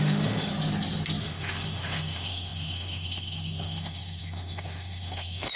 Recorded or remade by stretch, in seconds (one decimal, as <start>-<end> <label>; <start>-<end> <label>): 0.0-0.5 remade; 0.5-1.2 recorded; 1.2-5.6 remade